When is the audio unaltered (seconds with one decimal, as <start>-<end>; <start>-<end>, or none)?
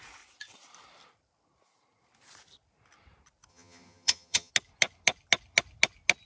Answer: 0.0-3.5; 4.5-6.3